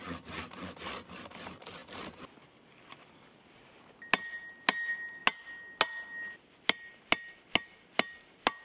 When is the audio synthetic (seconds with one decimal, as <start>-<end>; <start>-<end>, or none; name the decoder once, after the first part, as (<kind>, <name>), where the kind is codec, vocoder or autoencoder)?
none

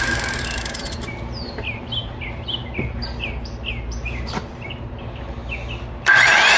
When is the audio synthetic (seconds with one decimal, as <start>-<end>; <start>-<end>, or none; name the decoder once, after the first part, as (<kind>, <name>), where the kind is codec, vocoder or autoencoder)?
0.0-5.4 (vocoder, BigVGAN v2); 6.0-6.6

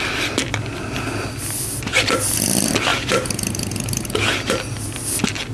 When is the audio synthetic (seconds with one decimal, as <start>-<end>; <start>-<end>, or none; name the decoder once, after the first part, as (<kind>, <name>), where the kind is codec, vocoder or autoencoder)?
none

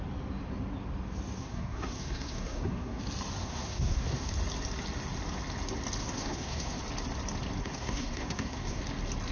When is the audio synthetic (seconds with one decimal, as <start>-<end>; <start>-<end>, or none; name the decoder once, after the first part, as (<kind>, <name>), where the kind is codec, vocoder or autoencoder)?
1.4-3.0 (codec, SNAC); 3.4-4.3; 6.0-6.8; 7.6-8.8

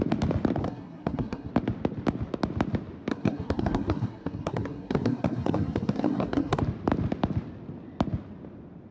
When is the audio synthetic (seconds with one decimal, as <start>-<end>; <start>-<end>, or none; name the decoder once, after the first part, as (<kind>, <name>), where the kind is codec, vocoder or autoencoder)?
0.6-1.5 (codec, SNAC); 3.1-6.6

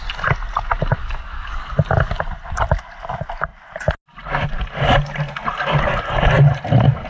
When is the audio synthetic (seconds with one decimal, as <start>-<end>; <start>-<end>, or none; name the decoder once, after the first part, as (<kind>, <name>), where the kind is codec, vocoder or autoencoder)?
1.0-1.7 (codec, DAC)